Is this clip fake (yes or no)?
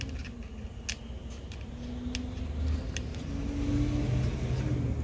no